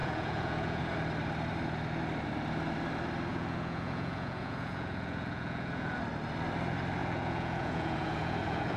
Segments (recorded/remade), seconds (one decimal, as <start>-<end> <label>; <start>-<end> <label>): 0.0-0.8 remade; 0.8-3.3 recorded; 3.3-6.0 remade; 6.0-7.0 recorded; 7.0-8.8 remade